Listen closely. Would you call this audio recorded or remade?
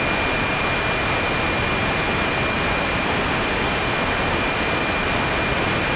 recorded